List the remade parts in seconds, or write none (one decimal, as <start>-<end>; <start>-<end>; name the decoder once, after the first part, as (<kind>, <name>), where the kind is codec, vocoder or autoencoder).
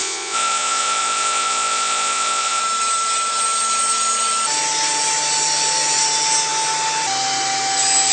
0.0-2.6 (vocoder, Vocos)